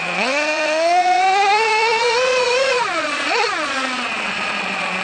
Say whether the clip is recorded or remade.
remade